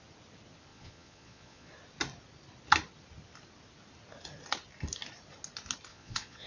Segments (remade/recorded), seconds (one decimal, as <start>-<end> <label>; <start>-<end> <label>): 0.0-0.7 recorded; 0.7-1.7 remade; 1.7-5.9 recorded; 5.9-6.5 remade